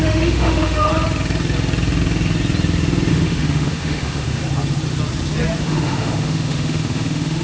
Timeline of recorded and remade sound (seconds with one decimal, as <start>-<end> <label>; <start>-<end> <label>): 0.0-0.9 remade; 0.9-3.1 recorded; 3.1-4.4 remade; 4.4-5.6 recorded; 5.6-7.4 remade